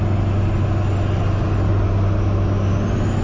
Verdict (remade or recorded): recorded